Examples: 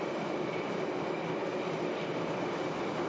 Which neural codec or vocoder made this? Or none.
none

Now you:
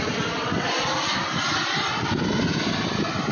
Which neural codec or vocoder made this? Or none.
none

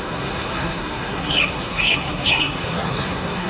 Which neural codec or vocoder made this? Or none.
codec, SNAC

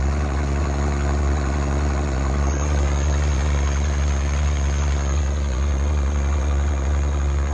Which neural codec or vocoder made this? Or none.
vocoder, Vocos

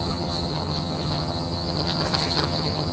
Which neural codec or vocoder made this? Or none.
vocoder, HiFi-GAN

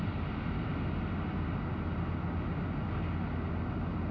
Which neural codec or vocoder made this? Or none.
none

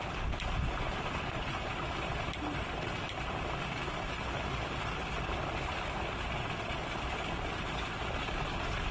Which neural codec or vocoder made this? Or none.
none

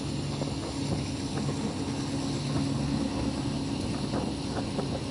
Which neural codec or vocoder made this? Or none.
none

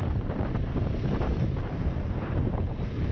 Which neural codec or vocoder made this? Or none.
vocoder, BigVGAN v2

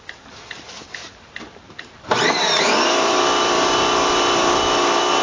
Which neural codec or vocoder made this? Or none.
vocoder, BigVGAN v2